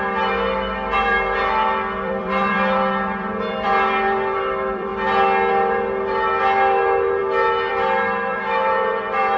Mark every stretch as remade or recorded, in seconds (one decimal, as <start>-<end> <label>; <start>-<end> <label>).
0.0-4.9 remade; 4.9-5.5 recorded; 5.5-7.2 remade; 7.2-7.7 recorded; 7.7-9.4 remade